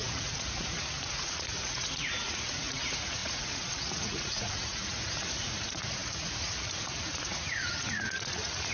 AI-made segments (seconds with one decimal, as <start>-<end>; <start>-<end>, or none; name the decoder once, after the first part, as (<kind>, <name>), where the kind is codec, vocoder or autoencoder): 0.0-8.7 (vocoder, Vocos)